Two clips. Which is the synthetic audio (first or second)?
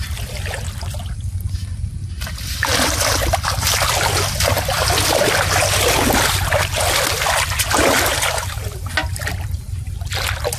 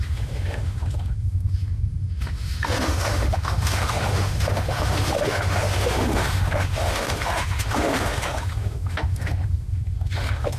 second